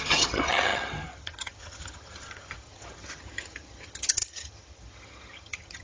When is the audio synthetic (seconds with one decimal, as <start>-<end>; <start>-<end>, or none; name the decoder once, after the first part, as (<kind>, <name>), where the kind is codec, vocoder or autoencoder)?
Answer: 0.0-5.8 (vocoder, HiFi-GAN)